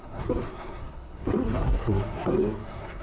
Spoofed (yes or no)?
yes